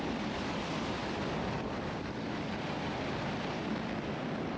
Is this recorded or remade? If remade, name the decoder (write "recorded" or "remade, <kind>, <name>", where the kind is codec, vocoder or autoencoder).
remade, vocoder, BigVGAN v2